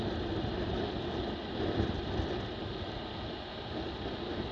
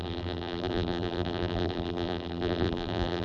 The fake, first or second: second